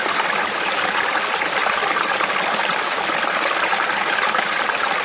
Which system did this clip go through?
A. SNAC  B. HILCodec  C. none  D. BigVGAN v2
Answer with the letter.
C